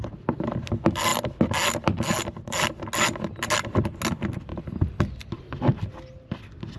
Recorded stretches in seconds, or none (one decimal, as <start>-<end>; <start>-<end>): 0.0-4.5; 5.3-6.8